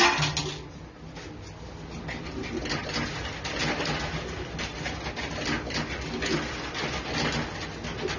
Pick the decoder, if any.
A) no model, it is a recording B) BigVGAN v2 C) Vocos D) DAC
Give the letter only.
A